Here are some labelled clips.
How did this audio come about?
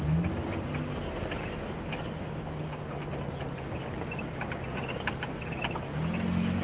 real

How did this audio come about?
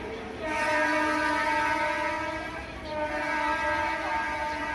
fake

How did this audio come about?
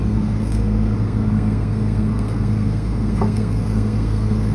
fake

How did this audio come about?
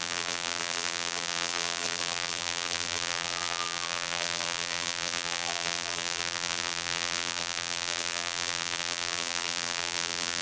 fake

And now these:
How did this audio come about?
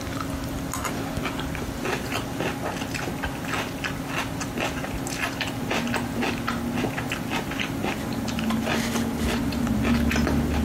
real